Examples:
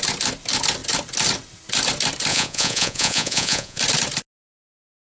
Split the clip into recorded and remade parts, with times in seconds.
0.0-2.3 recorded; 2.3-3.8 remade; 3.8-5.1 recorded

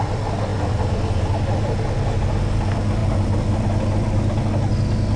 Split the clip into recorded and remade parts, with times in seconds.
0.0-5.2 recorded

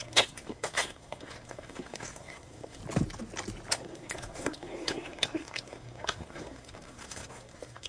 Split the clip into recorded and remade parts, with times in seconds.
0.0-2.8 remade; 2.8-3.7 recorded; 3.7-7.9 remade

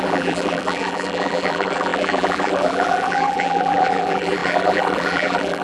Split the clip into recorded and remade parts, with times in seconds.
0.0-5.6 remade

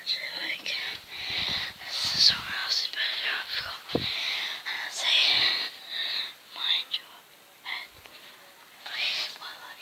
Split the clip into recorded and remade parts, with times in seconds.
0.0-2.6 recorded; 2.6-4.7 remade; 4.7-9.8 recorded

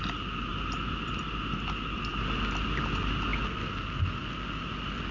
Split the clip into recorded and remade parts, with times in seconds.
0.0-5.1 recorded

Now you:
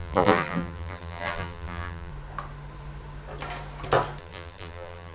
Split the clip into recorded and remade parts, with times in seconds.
0.0-2.1 remade; 2.1-4.2 recorded; 4.2-5.1 remade